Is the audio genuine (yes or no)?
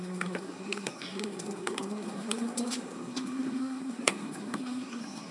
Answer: no